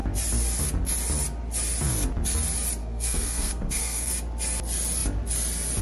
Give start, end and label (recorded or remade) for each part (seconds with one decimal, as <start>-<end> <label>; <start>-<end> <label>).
0.0-2.8 recorded; 2.8-4.1 remade; 4.1-5.8 recorded